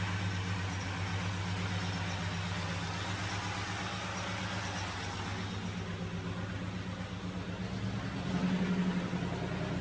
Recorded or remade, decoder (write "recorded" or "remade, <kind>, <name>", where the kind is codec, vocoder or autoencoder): recorded